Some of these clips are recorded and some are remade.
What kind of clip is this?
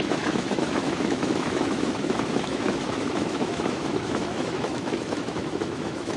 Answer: remade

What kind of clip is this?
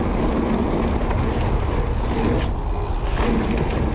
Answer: recorded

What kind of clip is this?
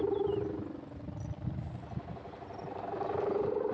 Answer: recorded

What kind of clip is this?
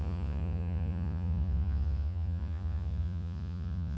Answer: remade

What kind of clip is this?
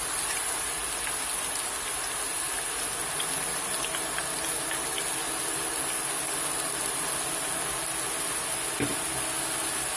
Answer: recorded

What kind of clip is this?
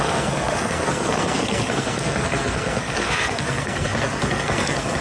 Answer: remade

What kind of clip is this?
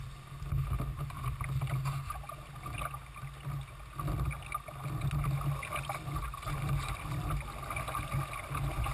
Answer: recorded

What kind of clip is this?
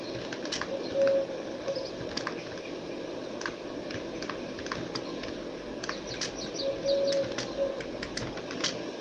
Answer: recorded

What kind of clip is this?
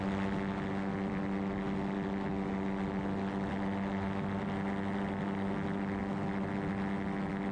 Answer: recorded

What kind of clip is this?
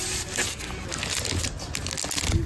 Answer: recorded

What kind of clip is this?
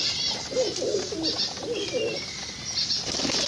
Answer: recorded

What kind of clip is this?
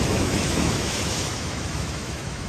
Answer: remade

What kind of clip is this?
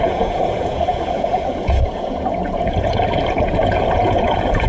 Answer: remade